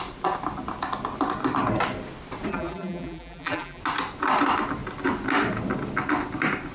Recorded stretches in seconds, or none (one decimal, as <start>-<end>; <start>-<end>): 0.0-2.5; 3.8-6.7